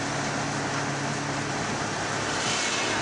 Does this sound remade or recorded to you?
recorded